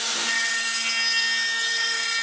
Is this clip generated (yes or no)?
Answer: no